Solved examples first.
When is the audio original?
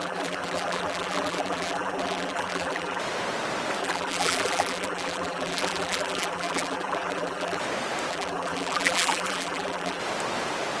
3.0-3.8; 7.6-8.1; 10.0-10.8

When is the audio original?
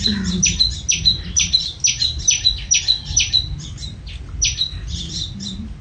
0.0-2.0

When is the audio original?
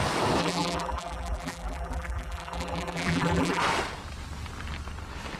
0.0-0.4; 3.6-5.4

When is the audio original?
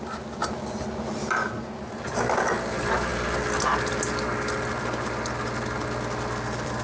0.0-6.8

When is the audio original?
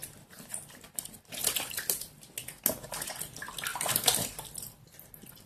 0.7-3.7; 4.5-5.5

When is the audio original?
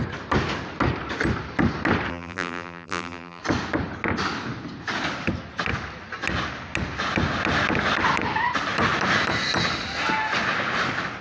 0.0-2.1; 3.4-11.2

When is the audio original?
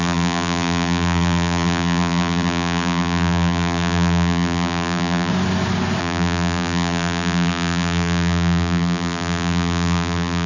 5.3-6.0